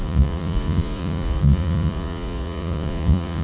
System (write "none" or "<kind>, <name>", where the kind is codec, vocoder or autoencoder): vocoder, Vocos